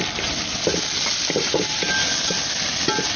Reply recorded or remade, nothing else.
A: recorded